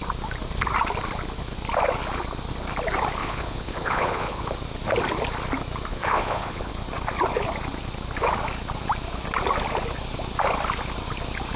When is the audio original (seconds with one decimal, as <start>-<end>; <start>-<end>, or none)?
0.0-3.2; 4.5-5.9; 6.7-11.6